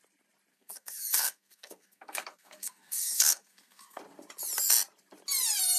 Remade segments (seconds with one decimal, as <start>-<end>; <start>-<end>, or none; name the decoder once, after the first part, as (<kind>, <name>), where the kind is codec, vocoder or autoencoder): 0.5-4.0 (codec, SNAC)